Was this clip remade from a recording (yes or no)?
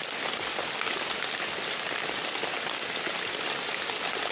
no